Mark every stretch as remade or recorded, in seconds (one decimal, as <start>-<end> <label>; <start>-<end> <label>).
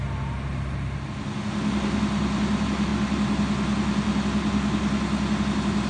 0.0-5.9 recorded